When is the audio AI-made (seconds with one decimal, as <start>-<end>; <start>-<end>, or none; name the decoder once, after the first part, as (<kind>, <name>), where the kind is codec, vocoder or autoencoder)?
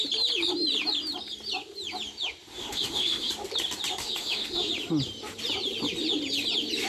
2.5-3.3 (autoencoder, DAC-VAE); 4.0-4.7